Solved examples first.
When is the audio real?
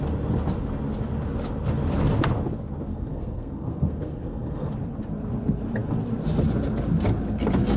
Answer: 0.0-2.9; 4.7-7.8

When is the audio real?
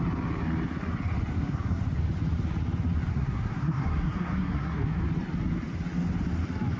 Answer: 0.0-1.3; 1.8-3.1; 5.0-6.8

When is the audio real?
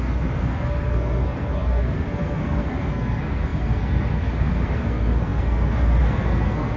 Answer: none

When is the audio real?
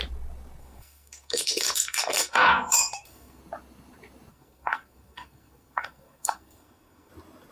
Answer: 0.0-0.6; 3.4-4.3; 7.1-7.5